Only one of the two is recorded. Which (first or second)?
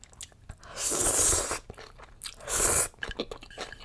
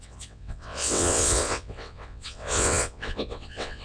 first